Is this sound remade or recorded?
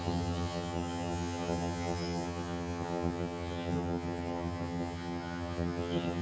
remade